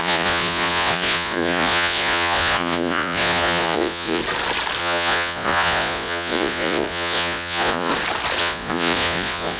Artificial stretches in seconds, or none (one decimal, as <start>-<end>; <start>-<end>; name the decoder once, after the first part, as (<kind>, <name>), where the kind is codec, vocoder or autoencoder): 0.0-4.2 (vocoder, Vocos); 4.8-7.9; 8.4-9.6